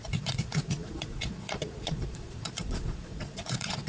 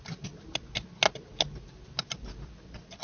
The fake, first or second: first